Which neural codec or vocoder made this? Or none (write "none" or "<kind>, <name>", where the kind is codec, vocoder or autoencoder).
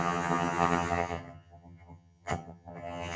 vocoder, HiFi-GAN